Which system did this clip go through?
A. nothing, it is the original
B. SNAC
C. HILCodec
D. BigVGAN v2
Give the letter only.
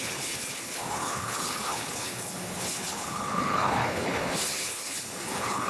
C